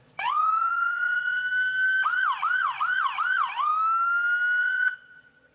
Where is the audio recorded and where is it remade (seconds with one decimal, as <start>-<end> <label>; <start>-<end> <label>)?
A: 0.0-1.4 remade; 1.4-2.0 recorded; 2.0-3.7 remade; 3.7-4.6 recorded; 4.6-5.5 remade